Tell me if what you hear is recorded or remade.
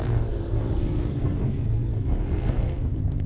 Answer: remade